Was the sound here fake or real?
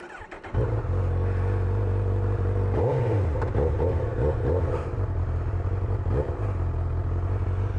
real